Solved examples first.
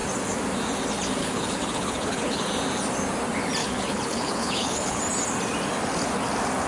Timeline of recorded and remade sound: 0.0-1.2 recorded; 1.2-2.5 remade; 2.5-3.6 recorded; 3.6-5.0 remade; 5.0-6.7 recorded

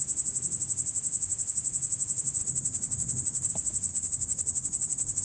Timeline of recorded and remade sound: 0.0-2.4 recorded; 2.4-3.5 remade; 3.5-3.9 recorded; 3.9-5.2 remade